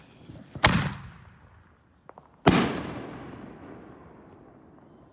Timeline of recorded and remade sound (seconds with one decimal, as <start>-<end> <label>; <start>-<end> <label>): 0.0-2.7 recorded; 2.7-4.6 remade; 4.6-5.1 recorded